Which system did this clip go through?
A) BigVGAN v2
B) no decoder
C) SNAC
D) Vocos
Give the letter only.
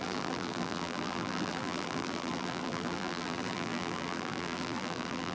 A